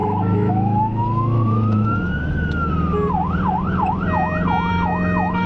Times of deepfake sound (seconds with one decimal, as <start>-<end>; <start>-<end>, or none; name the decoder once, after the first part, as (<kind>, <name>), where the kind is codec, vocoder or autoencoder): 0.0-2.7 (autoencoder, DAC-VAE); 4.7-5.5